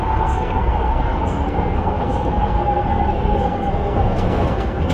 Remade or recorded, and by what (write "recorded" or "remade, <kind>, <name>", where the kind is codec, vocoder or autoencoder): remade, codec, SNAC